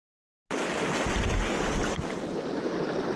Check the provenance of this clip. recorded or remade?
recorded